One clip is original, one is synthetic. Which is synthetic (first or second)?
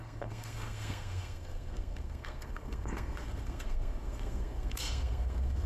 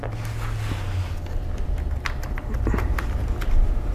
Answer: first